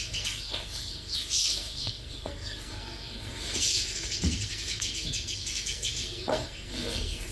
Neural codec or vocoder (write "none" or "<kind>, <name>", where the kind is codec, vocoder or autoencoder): codec, SNAC